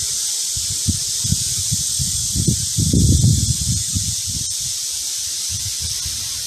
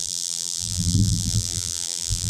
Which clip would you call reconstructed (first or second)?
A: second